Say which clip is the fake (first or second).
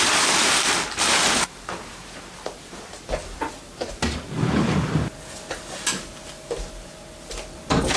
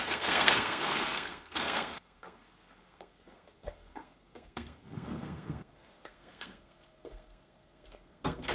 second